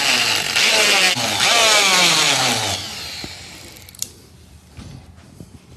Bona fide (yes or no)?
yes